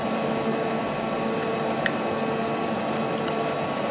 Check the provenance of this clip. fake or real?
real